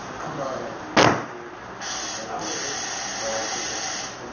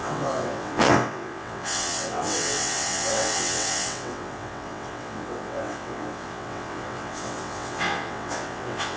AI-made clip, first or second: second